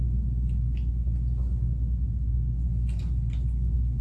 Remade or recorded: recorded